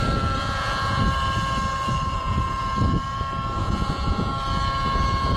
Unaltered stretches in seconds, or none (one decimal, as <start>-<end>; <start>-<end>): 0.0-0.4; 1.0-3.6; 4.3-5.4